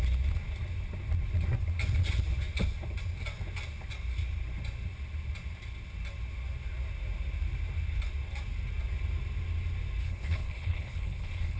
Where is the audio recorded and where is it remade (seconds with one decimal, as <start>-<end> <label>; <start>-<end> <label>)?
0.0-10.0 recorded; 10.0-11.6 remade